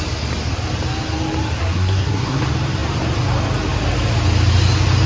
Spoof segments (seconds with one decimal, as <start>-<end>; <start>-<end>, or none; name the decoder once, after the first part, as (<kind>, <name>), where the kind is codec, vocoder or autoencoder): 1.6-2.4 (codec, SNAC)